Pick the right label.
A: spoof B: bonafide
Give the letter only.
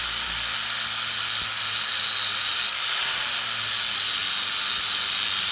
B